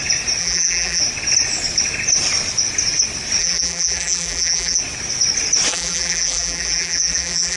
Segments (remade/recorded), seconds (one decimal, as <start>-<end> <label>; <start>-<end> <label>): 0.0-0.4 recorded; 0.4-1.0 remade; 1.0-3.4 recorded; 3.4-4.8 remade; 4.8-5.7 recorded; 5.7-7.6 remade